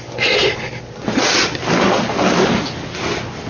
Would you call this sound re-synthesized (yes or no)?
no